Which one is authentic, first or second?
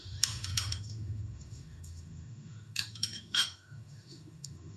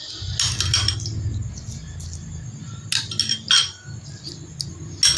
second